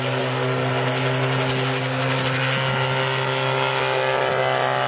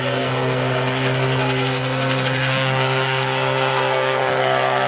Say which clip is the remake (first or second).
second